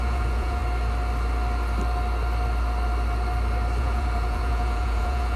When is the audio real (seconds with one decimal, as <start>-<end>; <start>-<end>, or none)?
0.6-3.8